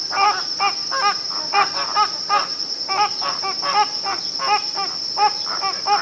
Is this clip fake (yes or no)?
no